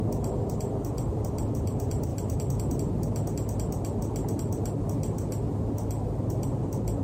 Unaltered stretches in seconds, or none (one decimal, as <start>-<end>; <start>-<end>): 2.1-6.3